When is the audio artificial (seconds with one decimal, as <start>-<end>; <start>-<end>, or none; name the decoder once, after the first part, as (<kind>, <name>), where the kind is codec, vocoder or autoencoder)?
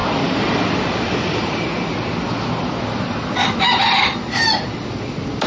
0.0-3.3 (vocoder, BigVGAN v2)